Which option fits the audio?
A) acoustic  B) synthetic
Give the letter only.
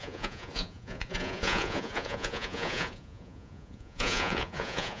B